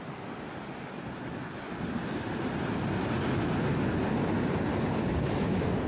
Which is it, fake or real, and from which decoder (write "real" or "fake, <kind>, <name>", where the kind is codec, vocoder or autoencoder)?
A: real